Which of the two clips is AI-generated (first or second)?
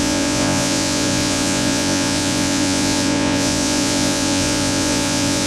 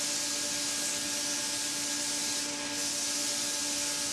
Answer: first